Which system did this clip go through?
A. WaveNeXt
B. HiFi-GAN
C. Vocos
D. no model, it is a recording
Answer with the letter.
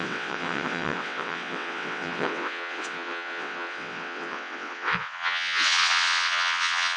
A